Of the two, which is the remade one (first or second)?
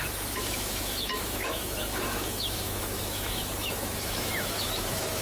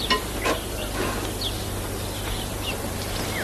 first